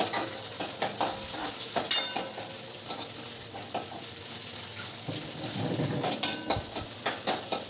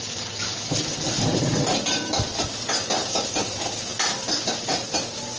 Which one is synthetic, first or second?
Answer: second